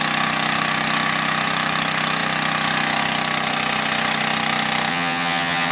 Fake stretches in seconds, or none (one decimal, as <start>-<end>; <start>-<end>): 4.9-5.7